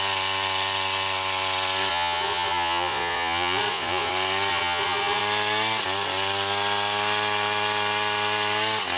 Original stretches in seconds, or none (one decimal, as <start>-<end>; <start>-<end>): 0.0-1.9; 4.1-4.5; 5.2-9.0